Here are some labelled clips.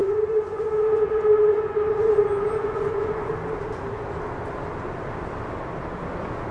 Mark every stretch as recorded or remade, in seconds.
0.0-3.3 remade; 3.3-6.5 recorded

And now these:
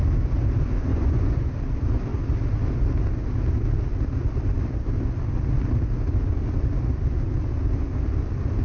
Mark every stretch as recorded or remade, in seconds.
0.0-0.9 recorded; 0.9-1.5 remade; 1.5-8.6 recorded

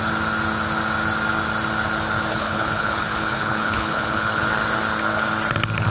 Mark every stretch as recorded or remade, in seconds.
0.0-2.3 recorded; 2.3-4.4 remade; 4.4-5.9 recorded